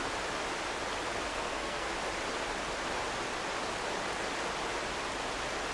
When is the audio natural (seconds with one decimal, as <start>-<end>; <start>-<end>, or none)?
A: 0.0-1.3; 1.9-5.7